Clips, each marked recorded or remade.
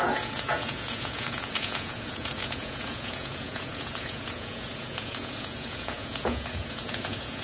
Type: remade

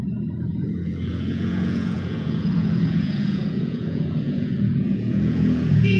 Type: remade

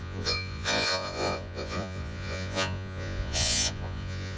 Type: remade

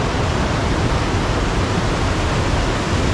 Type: recorded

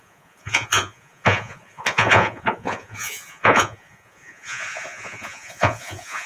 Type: remade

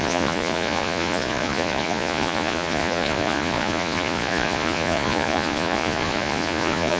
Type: remade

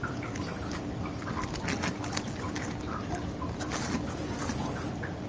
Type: recorded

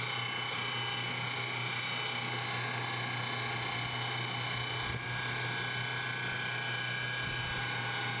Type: recorded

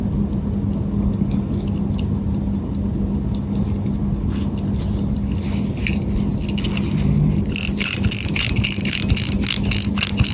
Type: recorded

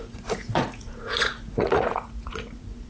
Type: remade